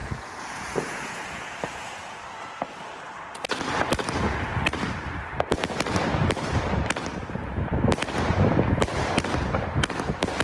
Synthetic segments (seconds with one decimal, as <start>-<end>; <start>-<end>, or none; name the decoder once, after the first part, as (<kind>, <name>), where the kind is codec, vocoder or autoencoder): 0.0-2.2 (vocoder, Vocos)